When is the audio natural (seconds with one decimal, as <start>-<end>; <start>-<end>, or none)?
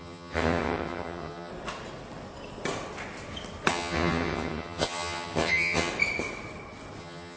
1.5-3.7; 5.9-7.0